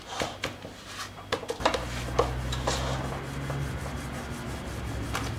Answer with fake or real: real